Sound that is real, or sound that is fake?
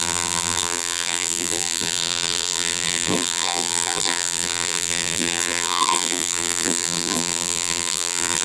fake